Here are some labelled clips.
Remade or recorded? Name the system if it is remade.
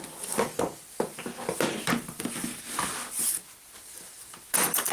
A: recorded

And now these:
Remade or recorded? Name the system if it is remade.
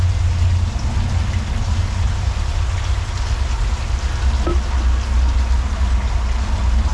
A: recorded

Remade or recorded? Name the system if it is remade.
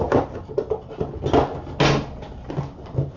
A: recorded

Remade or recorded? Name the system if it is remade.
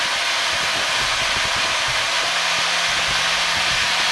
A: recorded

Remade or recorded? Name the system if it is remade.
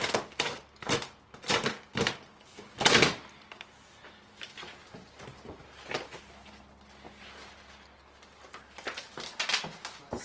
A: recorded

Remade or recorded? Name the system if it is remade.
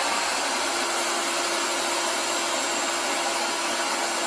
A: recorded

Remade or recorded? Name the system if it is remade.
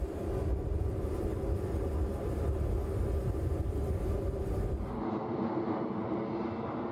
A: recorded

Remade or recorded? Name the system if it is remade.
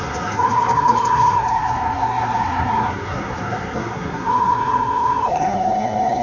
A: remade, codec, SNAC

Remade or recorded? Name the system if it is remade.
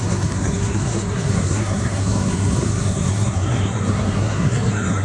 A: remade, codec, SNAC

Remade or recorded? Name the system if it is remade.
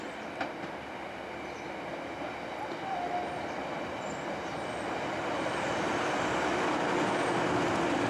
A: recorded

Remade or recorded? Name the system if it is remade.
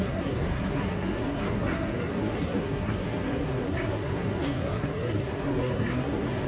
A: remade, codec, SNAC